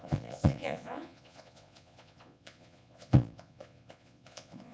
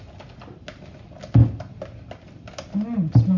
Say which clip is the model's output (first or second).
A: first